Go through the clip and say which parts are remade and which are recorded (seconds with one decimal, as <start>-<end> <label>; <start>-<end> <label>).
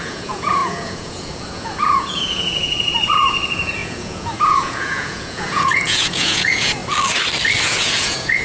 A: 0.0-6.8 remade; 6.8-7.6 recorded; 7.6-8.4 remade